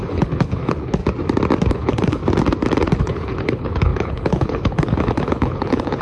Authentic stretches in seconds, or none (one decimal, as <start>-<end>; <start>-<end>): 1.0-1.7; 2.2-3.0